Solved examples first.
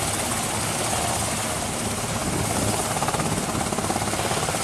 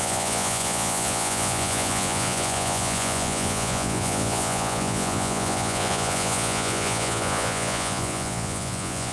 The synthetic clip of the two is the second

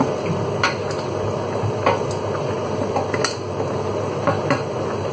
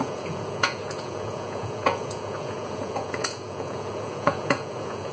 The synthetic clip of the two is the second